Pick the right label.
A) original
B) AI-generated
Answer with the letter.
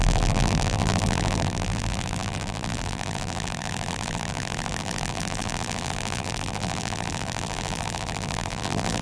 B